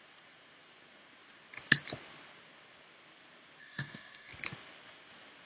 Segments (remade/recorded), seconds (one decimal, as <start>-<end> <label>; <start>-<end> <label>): 0.0-3.6 recorded; 3.6-4.3 remade; 4.3-5.5 recorded